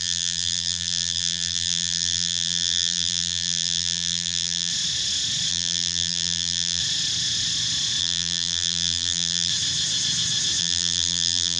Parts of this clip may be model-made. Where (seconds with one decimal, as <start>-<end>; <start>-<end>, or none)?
0.0-4.7; 5.5-6.8; 8.0-9.5; 10.6-11.6